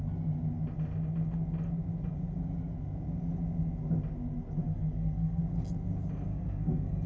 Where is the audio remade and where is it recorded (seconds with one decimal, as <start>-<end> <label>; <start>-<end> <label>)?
0.0-4.6 recorded; 4.6-5.4 remade; 5.4-6.3 recorded; 6.3-7.1 remade